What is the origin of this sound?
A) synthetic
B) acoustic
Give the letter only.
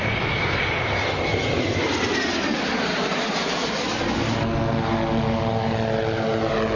B